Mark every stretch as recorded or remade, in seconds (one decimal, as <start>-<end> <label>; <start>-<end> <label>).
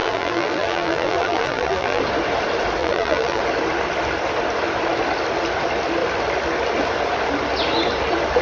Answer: 0.0-2.0 remade; 2.0-2.8 recorded; 2.8-3.4 remade; 3.4-8.4 recorded